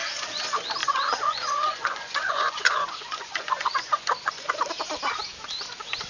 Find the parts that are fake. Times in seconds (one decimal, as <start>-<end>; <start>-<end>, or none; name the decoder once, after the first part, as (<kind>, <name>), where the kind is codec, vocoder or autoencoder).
0.8-4.5 (vocoder, Vocos)